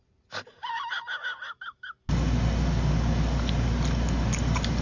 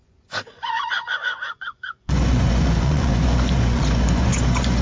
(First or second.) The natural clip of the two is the first